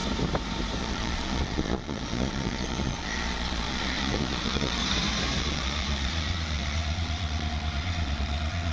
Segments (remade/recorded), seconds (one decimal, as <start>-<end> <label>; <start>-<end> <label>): 0.0-0.8 recorded; 0.8-4.8 remade; 4.8-5.4 recorded; 5.4-8.7 remade